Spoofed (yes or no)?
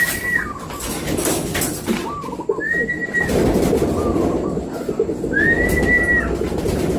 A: no